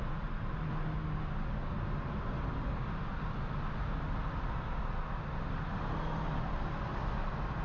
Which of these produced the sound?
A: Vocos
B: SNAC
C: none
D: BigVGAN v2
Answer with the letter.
C